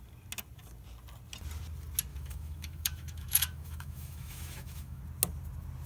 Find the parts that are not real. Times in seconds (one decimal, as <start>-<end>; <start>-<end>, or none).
2.1-5.0